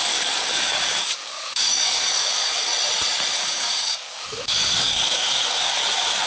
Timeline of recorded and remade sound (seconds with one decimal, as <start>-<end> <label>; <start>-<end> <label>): 0.0-2.7 remade; 2.7-3.3 recorded; 3.3-6.3 remade